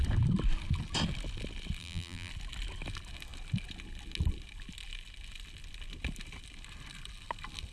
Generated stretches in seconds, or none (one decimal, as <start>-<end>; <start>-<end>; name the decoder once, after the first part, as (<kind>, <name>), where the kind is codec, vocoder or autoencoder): 1.8-2.3 (vocoder, BigVGAN v2)